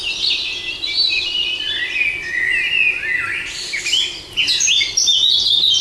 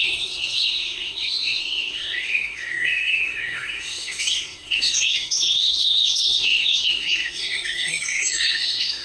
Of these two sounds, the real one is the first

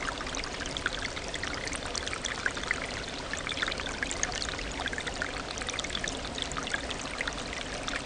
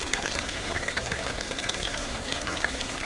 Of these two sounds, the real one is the first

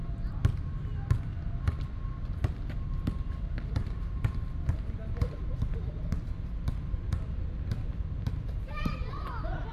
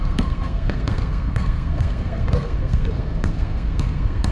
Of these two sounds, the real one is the first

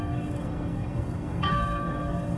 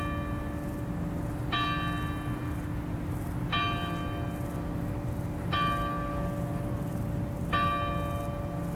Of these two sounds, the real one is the second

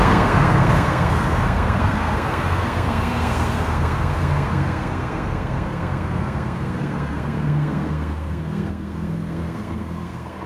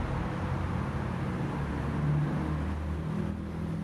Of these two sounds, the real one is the second